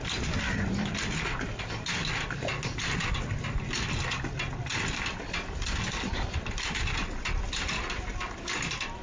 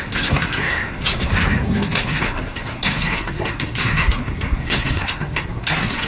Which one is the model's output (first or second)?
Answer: second